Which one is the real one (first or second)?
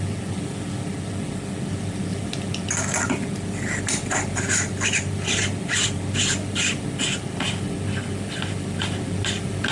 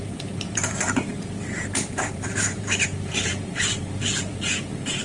first